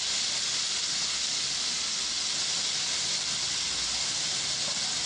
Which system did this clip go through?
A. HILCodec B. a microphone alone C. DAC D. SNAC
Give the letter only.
B